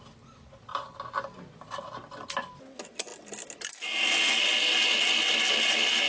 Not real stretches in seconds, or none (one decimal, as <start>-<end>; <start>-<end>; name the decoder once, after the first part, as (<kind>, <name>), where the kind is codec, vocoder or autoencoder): none